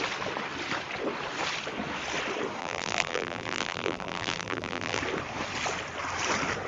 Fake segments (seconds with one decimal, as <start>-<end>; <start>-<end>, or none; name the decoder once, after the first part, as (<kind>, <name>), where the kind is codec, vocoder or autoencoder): 2.6-5.0 (vocoder, BigVGAN v2)